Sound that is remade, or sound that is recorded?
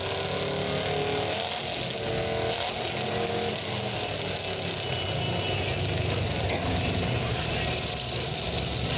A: recorded